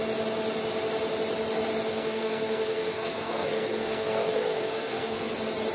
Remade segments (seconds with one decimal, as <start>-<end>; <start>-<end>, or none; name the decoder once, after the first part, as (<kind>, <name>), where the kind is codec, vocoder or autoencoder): 1.9-5.3 (codec, SNAC)